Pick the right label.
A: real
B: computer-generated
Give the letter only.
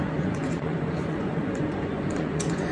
B